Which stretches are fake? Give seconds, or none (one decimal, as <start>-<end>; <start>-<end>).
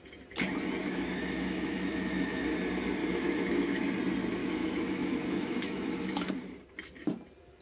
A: 0.8-2.4; 3.0-3.9; 4.4-6.3